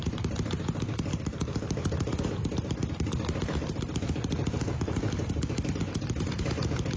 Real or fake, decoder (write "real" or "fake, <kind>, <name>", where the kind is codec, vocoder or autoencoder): fake, vocoder, BigVGAN v2